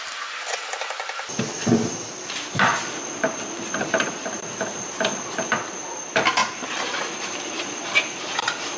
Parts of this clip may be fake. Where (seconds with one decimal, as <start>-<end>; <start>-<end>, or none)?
2.7-4.4; 6.4-7.0